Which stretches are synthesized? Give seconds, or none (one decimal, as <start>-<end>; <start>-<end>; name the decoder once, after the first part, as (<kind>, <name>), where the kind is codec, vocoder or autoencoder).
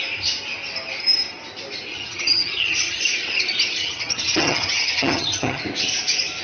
1.9-3.0 (vocoder, HiFi-GAN); 3.8-5.6